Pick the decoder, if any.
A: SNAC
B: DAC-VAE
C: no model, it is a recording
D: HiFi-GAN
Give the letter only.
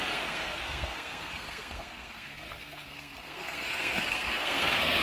A